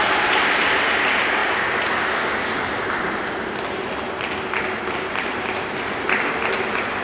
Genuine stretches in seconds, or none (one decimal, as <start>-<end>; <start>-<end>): none

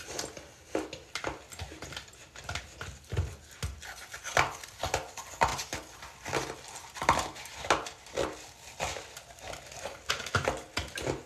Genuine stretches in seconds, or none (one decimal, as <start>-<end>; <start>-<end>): 0.0-11.3

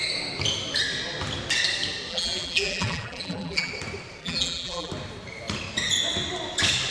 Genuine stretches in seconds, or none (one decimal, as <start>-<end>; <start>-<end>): 0.0-2.1; 3.7-4.2; 4.9-6.9